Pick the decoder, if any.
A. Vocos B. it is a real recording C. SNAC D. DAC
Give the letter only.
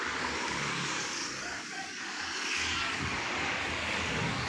D